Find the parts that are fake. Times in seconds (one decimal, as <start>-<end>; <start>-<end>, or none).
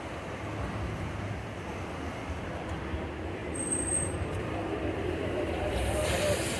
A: 3.4-5.7